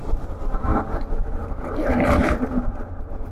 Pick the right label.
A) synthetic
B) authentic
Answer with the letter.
A